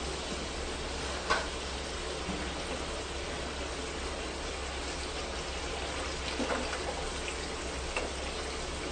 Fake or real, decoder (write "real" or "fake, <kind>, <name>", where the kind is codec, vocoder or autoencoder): real